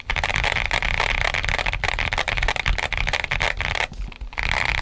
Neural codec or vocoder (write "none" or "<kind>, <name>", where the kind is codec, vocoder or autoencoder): none